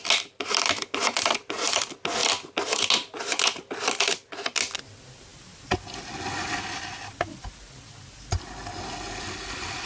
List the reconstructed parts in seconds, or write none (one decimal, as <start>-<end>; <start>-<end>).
none